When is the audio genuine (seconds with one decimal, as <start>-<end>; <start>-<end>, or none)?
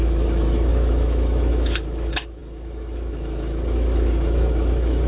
none